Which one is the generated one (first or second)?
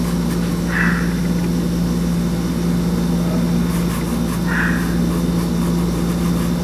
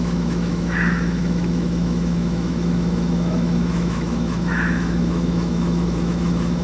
second